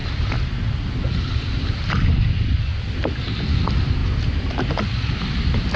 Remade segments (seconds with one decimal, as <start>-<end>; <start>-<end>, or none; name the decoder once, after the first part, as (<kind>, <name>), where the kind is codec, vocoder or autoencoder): none